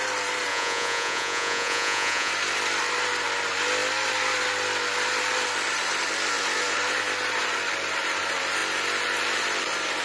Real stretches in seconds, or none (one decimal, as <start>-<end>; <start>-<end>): 0.0-0.5; 2.3-10.0